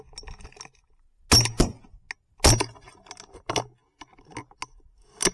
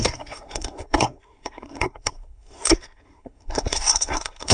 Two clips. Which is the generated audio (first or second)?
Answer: second